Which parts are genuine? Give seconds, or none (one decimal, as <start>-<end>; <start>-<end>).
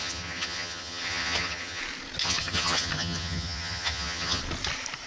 1.8-2.2; 4.4-5.1